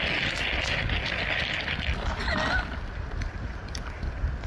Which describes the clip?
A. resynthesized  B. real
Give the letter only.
B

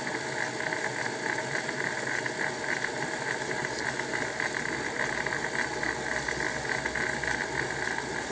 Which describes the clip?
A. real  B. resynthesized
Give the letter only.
A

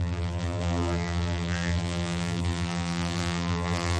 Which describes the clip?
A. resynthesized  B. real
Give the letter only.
A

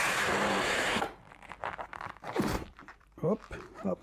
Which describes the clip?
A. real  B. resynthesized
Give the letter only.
B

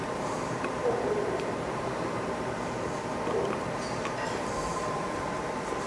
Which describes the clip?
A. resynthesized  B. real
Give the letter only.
A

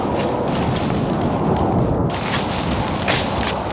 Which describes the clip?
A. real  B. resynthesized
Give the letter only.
A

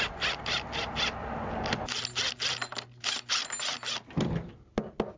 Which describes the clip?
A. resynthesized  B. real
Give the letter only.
B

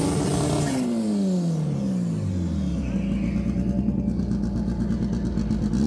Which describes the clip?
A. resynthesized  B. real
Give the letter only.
B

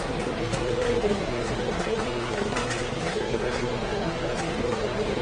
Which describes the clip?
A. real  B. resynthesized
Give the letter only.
B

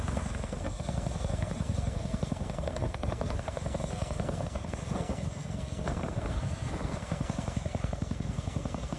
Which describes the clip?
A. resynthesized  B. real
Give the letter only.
A